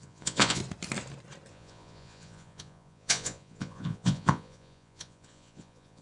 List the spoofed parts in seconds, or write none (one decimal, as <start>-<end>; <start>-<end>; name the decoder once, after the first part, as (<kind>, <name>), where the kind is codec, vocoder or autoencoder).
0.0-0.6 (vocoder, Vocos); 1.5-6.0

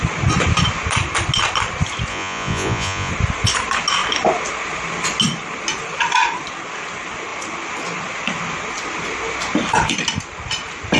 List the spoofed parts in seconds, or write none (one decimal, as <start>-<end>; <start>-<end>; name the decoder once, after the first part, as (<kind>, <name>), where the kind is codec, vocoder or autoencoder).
2.1-3.1 (vocoder, Vocos)

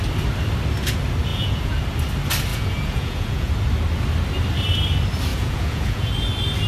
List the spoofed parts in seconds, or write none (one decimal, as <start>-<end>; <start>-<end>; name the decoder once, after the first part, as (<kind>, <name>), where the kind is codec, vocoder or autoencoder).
1.3-1.8 (vocoder, Vocos); 2.5-3.5; 5.3-6.1

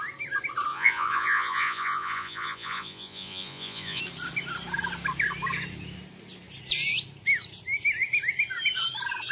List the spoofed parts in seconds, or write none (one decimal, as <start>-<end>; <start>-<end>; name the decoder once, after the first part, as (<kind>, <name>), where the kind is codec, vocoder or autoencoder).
0.7-4.0 (vocoder, Vocos)

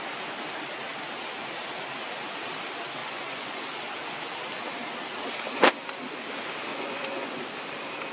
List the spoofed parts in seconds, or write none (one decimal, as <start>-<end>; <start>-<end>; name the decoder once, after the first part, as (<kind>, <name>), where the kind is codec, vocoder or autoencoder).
3.0-3.6 (vocoder, Vocos); 6.7-7.4